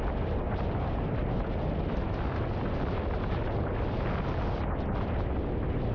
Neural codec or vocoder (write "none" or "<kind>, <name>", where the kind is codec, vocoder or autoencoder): none